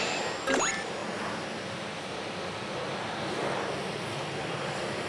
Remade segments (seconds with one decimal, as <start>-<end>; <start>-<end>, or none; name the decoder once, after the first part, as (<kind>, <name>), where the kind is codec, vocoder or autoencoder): none